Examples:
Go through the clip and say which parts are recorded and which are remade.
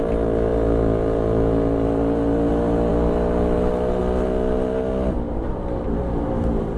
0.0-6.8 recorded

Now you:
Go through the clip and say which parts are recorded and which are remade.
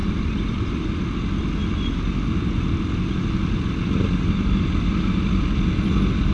0.0-0.7 remade; 0.7-6.3 recorded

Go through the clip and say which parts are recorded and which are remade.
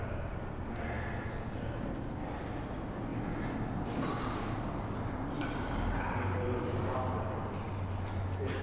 0.0-8.6 recorded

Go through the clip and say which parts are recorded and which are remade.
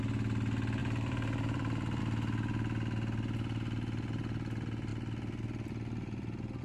0.0-0.8 recorded; 0.8-2.0 remade; 2.0-6.6 recorded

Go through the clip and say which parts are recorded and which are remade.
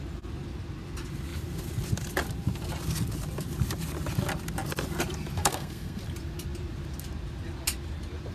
0.0-5.4 recorded; 5.4-6.0 remade; 6.0-8.3 recorded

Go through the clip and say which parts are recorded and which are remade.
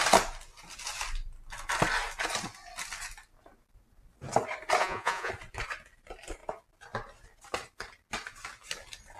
0.0-4.8 recorded; 4.8-5.3 remade; 5.3-9.2 recorded